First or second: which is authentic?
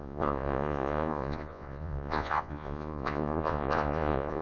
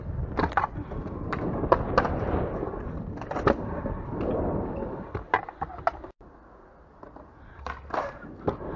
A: second